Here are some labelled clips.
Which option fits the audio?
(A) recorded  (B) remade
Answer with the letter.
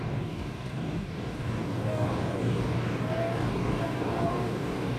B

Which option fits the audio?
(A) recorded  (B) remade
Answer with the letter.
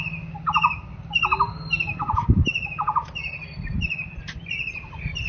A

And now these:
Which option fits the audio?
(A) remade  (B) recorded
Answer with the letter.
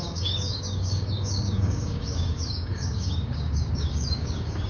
A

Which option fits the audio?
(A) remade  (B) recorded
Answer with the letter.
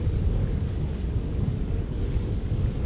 A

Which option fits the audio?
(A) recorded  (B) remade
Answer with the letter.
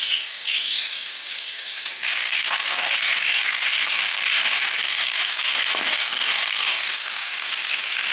B